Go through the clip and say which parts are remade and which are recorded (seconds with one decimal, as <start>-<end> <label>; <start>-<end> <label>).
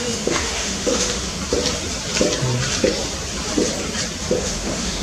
0.0-1.4 remade; 1.4-4.4 recorded; 4.4-5.0 remade